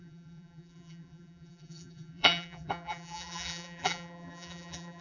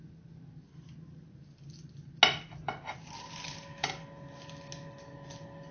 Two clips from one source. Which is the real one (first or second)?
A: second